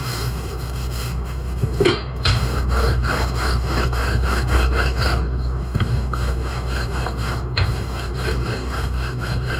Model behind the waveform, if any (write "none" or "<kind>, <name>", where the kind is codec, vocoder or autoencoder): codec, DAC